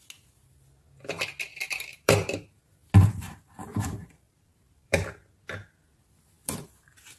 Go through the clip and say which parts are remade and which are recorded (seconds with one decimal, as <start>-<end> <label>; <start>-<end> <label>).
0.0-1.5 recorded; 1.5-2.6 remade; 2.6-3.2 recorded; 3.2-5.2 remade; 5.2-6.4 recorded; 6.4-7.2 remade